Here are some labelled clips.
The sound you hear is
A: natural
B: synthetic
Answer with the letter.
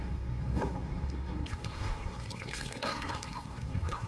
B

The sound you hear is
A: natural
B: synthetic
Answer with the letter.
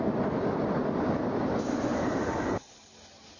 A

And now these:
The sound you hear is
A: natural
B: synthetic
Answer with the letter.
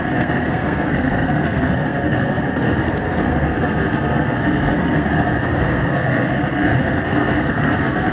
B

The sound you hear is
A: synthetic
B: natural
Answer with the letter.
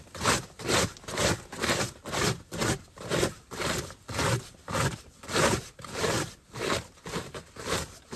B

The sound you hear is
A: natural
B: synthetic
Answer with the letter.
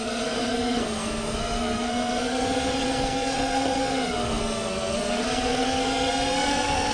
B